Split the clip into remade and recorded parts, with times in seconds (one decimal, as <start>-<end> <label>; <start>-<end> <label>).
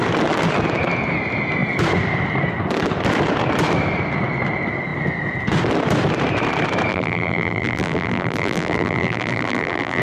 0.0-6.9 recorded; 6.9-10.0 remade